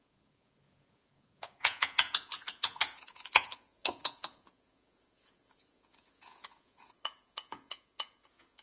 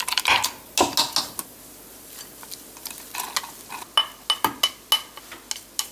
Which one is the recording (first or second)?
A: second